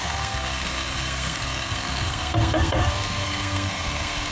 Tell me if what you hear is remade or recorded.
remade